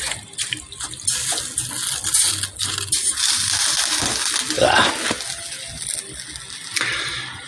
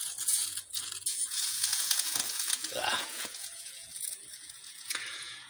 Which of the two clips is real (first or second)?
first